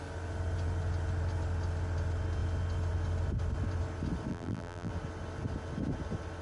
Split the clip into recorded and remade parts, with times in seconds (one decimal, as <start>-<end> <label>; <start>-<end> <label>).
0.0-4.3 recorded; 4.3-4.9 remade; 4.9-6.4 recorded